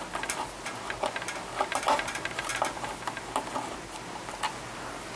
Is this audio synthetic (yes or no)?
no